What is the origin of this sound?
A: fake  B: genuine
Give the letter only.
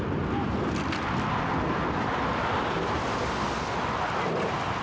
B